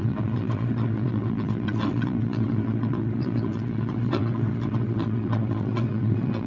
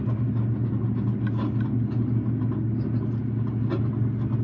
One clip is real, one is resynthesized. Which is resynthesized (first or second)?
first